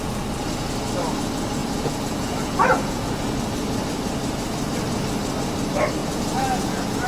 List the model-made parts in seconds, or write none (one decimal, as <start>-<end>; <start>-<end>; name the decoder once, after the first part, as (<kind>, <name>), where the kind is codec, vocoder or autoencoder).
1.6-3.1 (vocoder, Vocos); 6.0-7.1